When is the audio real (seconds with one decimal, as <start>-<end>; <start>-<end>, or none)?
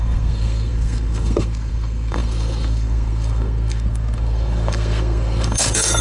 none